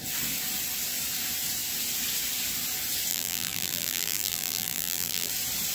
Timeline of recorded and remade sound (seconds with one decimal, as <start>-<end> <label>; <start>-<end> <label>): 0.0-3.1 recorded; 3.1-5.3 remade; 5.3-5.7 recorded